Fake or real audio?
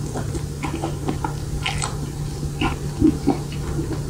real